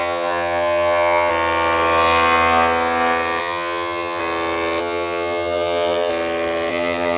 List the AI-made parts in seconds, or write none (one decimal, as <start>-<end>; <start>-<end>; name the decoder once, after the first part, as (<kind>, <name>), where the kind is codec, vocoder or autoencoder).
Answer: 0.0-1.3 (vocoder, HiFi-GAN); 3.4-4.2; 4.8-6.1; 6.7-7.2

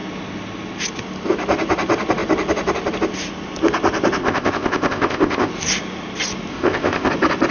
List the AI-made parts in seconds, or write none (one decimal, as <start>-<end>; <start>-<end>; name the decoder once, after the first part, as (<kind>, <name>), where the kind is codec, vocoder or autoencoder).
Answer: 4.2-5.5 (codec, ZipCodec); 6.5-7.1